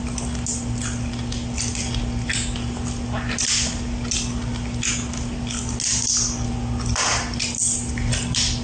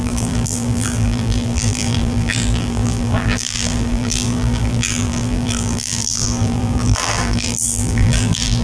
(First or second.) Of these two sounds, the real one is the first